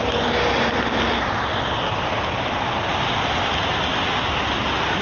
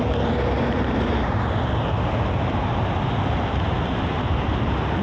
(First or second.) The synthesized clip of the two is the second